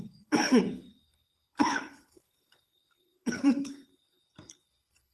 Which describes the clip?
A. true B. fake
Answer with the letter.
B